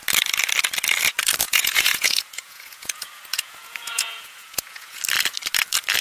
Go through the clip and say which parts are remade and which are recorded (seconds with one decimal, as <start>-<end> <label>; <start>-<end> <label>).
0.0-1.4 recorded; 1.4-5.0 remade; 5.0-6.0 recorded

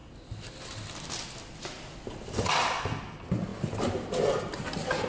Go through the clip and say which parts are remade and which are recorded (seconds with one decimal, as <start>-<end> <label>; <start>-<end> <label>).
0.0-5.1 recorded

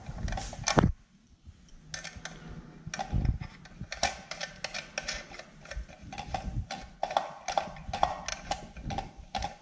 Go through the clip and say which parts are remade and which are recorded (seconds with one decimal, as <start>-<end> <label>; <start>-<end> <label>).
0.0-6.8 recorded; 6.8-7.7 remade; 7.7-8.3 recorded; 8.3-9.6 remade

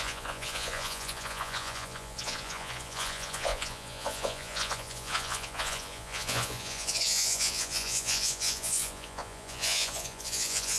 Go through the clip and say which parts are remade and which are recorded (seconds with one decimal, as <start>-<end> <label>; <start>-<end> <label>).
0.0-10.8 remade

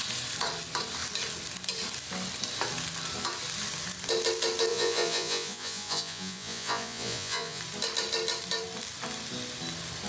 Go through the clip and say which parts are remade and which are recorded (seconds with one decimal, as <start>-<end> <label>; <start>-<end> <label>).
0.0-4.7 recorded; 4.7-7.6 remade; 7.6-10.1 recorded

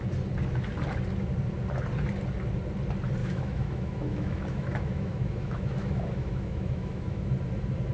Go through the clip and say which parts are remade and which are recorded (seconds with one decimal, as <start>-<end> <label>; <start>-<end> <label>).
0.0-3.2 recorded; 3.2-7.3 remade; 7.3-7.9 recorded

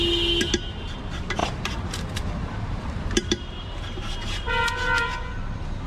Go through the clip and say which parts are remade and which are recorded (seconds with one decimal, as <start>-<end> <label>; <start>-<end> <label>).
0.0-1.4 recorded; 1.4-4.5 remade; 4.5-5.9 recorded